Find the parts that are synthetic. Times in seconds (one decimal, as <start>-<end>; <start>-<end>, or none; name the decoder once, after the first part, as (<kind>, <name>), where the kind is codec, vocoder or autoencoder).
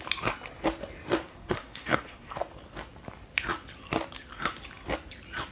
1.3-2.3 (codec, SNAC)